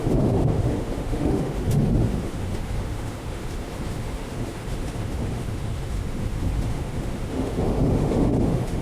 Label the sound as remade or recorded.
remade